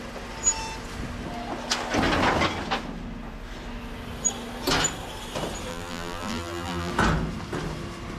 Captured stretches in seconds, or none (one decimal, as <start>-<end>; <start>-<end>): 0.0-5.7; 6.9-8.2

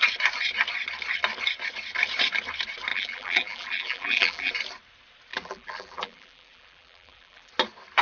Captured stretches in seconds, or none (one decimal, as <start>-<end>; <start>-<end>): 0.0-2.9; 4.5-5.3; 7.5-8.0

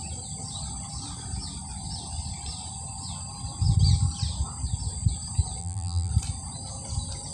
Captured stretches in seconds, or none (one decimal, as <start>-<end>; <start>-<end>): 0.0-5.6; 6.1-7.3

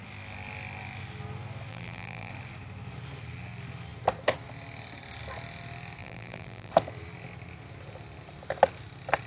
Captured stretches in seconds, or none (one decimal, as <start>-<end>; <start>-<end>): 0.0-1.7; 2.3-6.0; 6.7-9.3

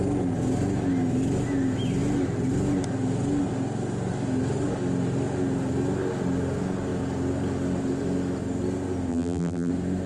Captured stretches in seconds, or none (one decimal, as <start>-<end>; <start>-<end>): 0.0-9.1; 9.7-10.1